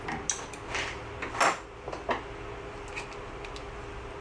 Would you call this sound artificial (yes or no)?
no